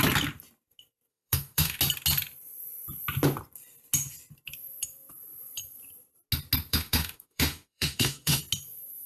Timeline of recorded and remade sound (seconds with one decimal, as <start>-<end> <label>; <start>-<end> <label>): 0.0-1.1 recorded; 1.1-1.8 remade; 1.8-6.7 recorded; 6.7-8.4 remade; 8.4-9.1 recorded